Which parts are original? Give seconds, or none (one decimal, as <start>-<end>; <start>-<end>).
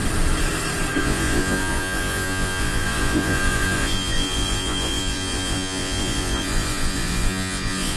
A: 0.0-1.0